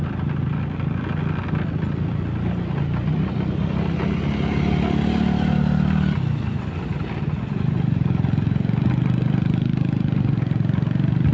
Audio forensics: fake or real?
real